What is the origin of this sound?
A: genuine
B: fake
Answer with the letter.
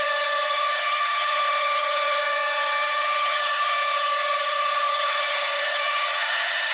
B